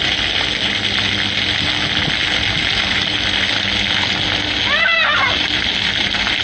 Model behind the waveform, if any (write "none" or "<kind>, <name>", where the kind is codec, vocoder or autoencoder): none